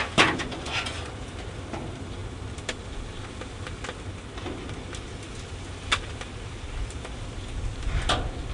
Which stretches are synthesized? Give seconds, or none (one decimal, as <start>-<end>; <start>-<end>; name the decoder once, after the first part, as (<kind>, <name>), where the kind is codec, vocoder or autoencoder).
0.0-1.1 (vocoder, Vocos)